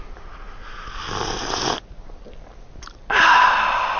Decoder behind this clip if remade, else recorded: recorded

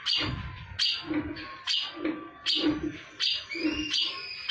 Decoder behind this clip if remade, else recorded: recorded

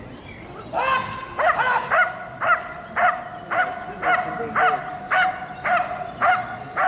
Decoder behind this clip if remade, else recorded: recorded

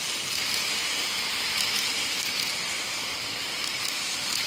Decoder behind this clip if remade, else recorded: recorded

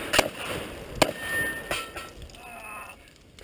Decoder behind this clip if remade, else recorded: recorded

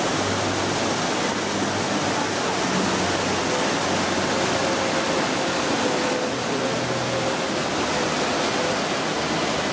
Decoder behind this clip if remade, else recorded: recorded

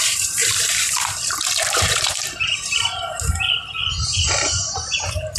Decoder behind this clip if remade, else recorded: remade, vocoder, BigVGAN v2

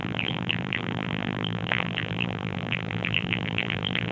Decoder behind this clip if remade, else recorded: remade, vocoder, BigVGAN v2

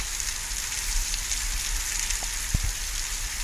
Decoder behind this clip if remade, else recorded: recorded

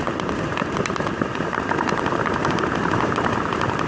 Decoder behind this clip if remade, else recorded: remade, vocoder, BigVGAN v2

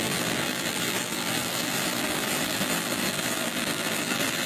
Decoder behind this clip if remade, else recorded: remade, vocoder, BigVGAN v2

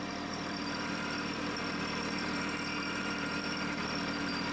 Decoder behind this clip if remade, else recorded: remade, vocoder, BigVGAN v2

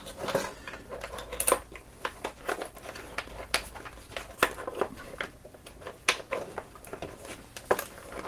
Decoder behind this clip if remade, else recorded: recorded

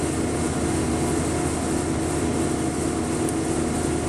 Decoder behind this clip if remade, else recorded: recorded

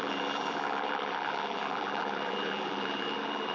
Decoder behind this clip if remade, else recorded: remade, vocoder, BigVGAN v2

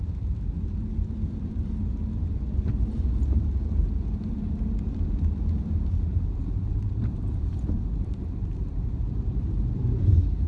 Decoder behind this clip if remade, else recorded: remade, vocoder, BigVGAN v2